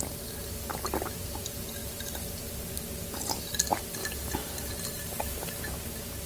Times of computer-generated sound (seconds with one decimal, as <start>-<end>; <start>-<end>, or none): none